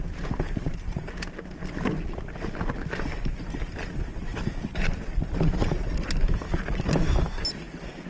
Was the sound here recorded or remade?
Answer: recorded